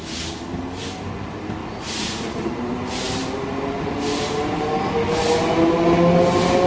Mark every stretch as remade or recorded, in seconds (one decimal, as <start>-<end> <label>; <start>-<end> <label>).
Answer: 0.0-1.6 recorded; 1.6-2.5 remade; 2.5-6.7 recorded